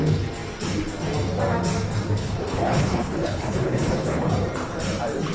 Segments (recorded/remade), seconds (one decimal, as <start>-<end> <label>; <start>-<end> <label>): 0.0-2.2 recorded; 2.2-4.3 remade; 4.3-5.3 recorded